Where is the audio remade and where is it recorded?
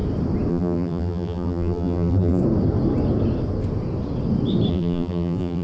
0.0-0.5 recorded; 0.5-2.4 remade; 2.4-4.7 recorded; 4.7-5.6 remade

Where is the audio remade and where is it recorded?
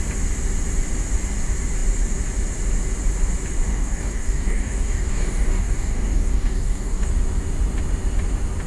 0.0-3.7 recorded; 3.7-7.1 remade; 7.1-8.7 recorded